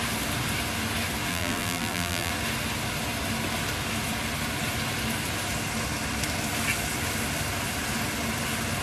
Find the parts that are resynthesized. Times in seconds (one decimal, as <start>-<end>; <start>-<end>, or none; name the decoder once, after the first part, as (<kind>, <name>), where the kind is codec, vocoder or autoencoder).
1.3-2.3 (vocoder, BigVGAN v2)

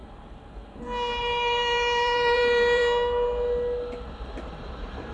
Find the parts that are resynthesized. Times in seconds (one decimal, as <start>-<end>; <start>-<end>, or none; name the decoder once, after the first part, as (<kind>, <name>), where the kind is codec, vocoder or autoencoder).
1.2-2.8 (vocoder, BigVGAN v2); 4.5-5.1

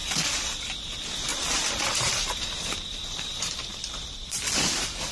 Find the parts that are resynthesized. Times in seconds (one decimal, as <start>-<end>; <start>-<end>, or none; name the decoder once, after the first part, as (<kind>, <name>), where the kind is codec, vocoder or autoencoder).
1.3-2.4 (vocoder, BigVGAN v2); 3.7-4.6

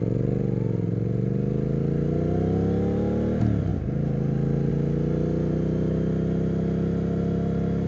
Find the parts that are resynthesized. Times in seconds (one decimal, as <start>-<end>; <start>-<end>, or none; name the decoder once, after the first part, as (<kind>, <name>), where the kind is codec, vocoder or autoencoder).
none

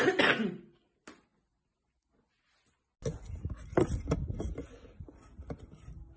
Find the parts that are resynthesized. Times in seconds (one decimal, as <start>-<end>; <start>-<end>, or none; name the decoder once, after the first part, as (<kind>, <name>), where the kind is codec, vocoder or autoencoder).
none